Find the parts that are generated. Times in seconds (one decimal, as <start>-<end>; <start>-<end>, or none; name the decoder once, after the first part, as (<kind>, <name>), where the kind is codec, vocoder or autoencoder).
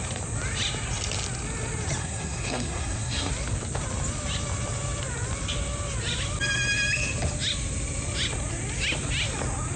2.0-3.3 (codec, SNAC)